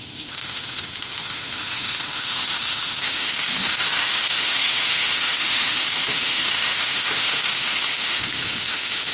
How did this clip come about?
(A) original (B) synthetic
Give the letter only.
B